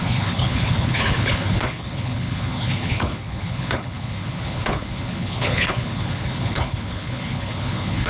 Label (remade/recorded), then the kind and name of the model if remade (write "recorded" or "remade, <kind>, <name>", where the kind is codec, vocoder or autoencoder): remade, codec, HILCodec